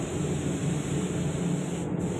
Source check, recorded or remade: recorded